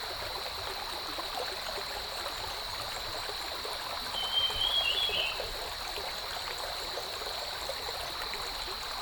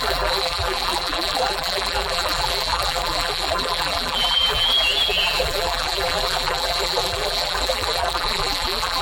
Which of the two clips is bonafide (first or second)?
first